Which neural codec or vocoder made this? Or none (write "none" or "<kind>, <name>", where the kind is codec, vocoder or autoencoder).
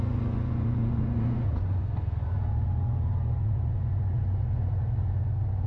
vocoder, Vocos